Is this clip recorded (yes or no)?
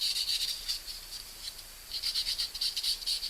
no